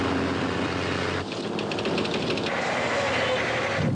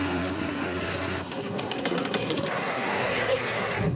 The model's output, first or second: second